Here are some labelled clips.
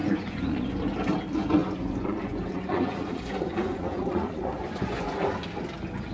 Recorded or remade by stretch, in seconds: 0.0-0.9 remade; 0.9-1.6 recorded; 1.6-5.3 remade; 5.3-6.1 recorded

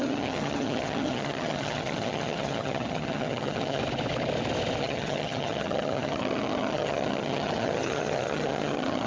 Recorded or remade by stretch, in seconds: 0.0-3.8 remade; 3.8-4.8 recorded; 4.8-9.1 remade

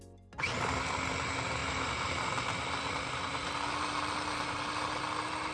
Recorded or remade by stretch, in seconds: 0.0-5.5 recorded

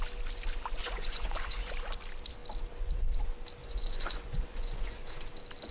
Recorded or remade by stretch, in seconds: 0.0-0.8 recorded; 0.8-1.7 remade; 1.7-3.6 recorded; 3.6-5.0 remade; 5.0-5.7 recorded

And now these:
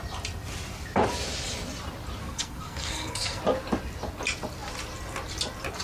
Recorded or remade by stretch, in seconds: 0.0-2.2 recorded; 2.2-3.4 remade; 3.4-5.8 recorded

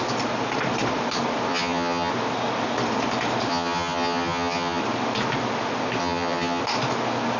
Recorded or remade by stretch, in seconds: 0.0-1.5 recorded; 1.5-2.1 remade; 2.1-3.5 recorded; 3.5-4.8 remade; 4.8-6.0 recorded; 6.0-6.6 remade; 6.6-7.4 recorded